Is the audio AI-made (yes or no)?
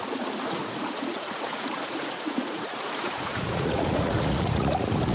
yes